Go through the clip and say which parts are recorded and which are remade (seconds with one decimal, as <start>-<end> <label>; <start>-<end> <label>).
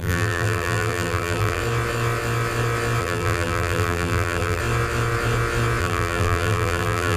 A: 0.0-1.6 remade; 1.6-3.0 recorded; 3.0-4.6 remade; 4.6-5.8 recorded; 5.8-7.2 remade